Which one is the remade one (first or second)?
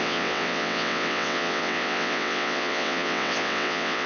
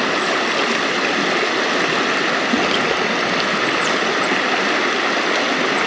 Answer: first